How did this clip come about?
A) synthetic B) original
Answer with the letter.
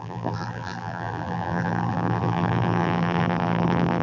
A